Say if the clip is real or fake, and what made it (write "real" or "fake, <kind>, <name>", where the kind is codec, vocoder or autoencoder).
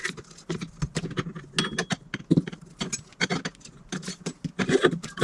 real